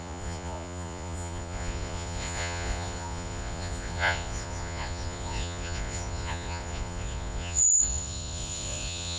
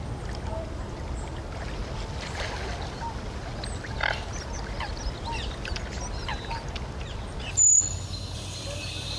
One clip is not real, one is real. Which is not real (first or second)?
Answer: first